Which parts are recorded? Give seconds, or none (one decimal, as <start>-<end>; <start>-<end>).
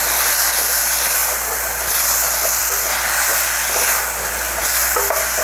0.0-1.2; 1.9-5.4